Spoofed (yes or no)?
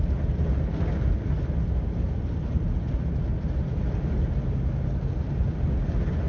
no